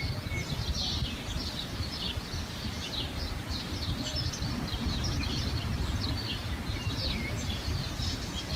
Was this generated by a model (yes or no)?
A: no